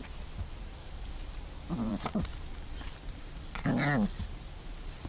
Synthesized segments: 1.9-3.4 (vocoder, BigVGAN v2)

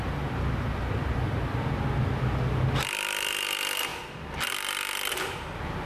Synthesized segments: none

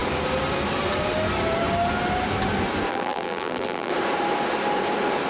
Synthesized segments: 2.9-3.9 (vocoder, BigVGAN v2)

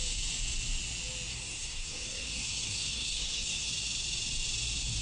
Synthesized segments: 1.3-3.7 (codec, SNAC)

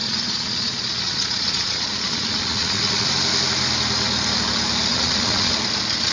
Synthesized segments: 0.0-3.1 (vocoder, Vocos); 4.9-5.5

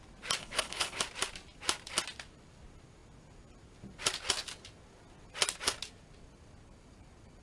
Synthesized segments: 0.4-1.0 (codec, HILCodec)